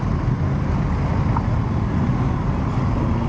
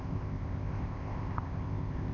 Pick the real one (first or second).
first